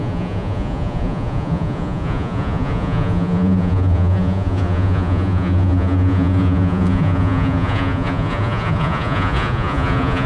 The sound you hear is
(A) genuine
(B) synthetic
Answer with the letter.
B